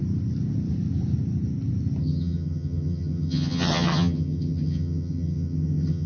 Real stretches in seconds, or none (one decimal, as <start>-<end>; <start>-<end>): 0.0-2.0